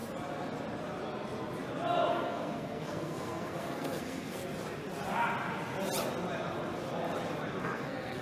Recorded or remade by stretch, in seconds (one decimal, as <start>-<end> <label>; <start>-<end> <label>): 0.0-2.1 recorded; 2.1-4.4 remade; 4.4-7.6 recorded; 7.6-8.2 remade